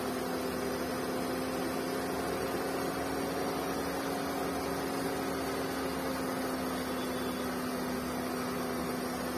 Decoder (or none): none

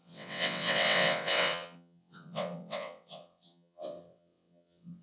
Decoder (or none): vocoder, WaveNeXt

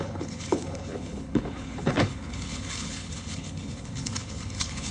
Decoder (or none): codec, HILCodec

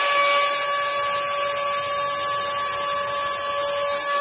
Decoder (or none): none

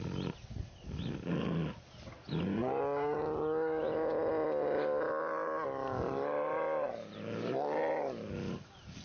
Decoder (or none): none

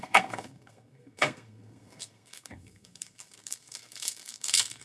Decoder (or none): codec, SNAC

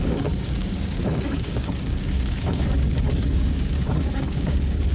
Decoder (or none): codec, DAC